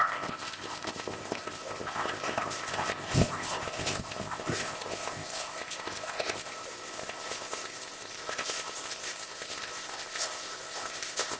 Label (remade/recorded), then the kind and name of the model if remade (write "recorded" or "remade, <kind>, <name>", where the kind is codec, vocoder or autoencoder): remade, codec, ZipCodec